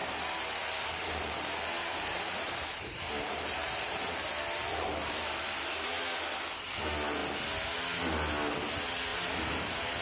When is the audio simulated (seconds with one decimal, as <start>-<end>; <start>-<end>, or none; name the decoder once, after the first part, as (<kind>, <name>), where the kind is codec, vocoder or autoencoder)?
0.0-4.1 (vocoder, BigVGAN v2); 4.7-6.0; 9.1-10.0